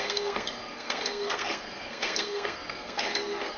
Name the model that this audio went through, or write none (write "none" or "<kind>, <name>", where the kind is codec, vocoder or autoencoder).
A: codec, SNAC